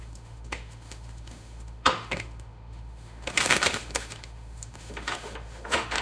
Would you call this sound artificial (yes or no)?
yes